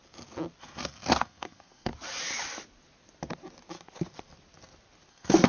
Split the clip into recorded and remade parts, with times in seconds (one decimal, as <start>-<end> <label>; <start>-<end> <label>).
0.0-0.6 recorded; 0.6-1.9 remade; 1.9-5.1 recorded; 5.1-5.5 remade